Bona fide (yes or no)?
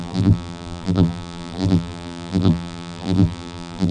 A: no